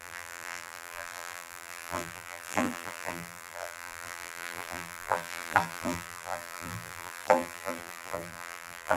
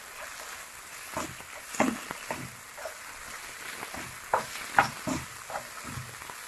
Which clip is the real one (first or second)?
second